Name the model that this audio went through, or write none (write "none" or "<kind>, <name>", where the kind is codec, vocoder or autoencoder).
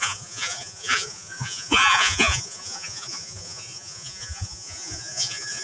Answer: vocoder, Vocos